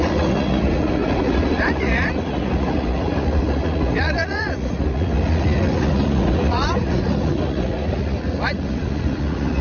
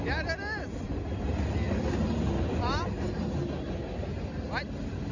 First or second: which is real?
second